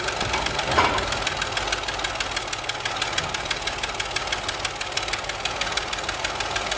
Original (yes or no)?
yes